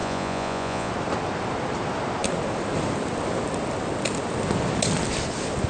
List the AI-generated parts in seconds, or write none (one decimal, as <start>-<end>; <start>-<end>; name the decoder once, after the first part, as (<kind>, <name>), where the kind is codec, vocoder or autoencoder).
0.0-0.9 (vocoder, Vocos)